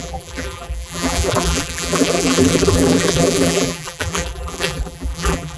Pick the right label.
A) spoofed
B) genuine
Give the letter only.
A